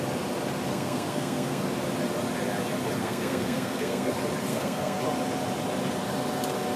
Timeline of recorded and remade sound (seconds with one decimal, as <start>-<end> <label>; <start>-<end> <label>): 0.0-0.7 recorded; 0.7-1.6 remade; 1.6-3.0 recorded; 3.0-4.1 remade; 4.1-4.5 recorded; 4.5-5.0 remade; 5.0-6.8 recorded